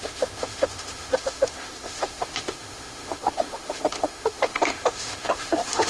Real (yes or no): no